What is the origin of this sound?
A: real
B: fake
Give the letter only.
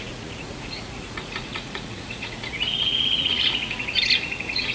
B